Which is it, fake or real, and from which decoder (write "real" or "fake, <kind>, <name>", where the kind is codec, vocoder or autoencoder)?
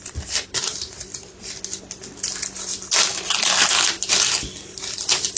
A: real